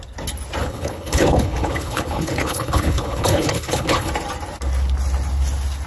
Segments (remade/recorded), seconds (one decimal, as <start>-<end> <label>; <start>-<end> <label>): 0.0-0.6 recorded; 0.6-4.1 remade; 4.1-5.9 recorded